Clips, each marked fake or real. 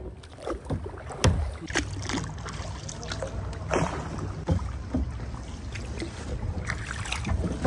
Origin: real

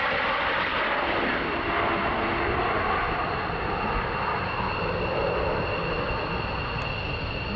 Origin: real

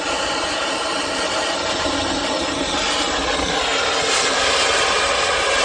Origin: real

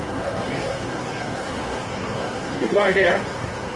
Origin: fake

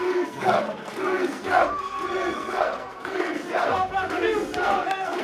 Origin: fake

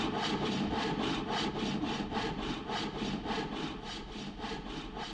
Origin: fake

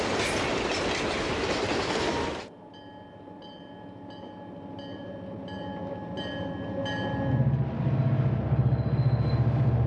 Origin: real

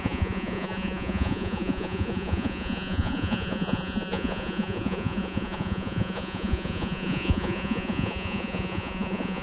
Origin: fake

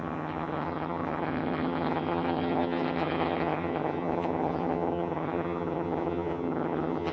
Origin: fake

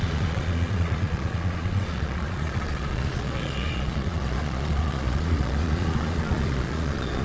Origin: fake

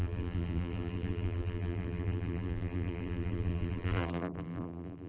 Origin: fake